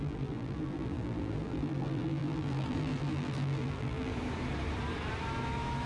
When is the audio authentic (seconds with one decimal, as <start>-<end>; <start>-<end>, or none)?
4.1-5.9